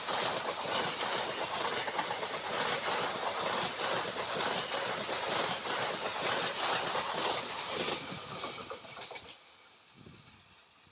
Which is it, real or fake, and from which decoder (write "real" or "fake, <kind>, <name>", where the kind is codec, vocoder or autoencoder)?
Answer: real